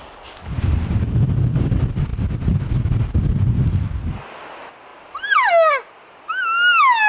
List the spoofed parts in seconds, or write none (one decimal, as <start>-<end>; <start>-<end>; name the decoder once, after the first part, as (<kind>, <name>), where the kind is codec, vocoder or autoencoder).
none